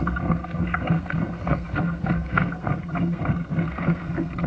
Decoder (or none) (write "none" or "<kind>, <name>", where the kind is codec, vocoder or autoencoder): codec, SNAC